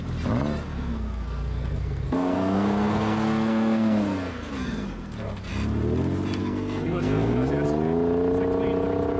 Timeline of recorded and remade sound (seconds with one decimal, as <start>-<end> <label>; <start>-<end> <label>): 0.0-0.7 recorded; 0.7-5.5 remade; 5.5-6.4 recorded; 6.4-7.5 remade; 7.5-9.2 recorded